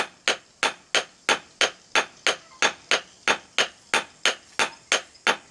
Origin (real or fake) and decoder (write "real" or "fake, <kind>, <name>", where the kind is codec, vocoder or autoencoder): real